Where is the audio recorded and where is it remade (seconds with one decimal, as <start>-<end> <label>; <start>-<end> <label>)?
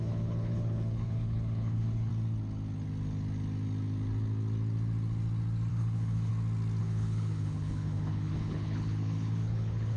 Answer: 0.0-2.1 remade; 2.1-5.7 recorded; 5.7-6.3 remade; 6.3-6.8 recorded; 6.8-10.0 remade